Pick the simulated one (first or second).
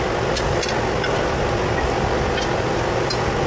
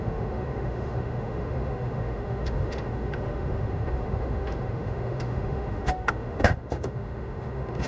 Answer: second